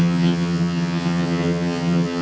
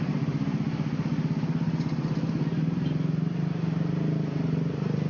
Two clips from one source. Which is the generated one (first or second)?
first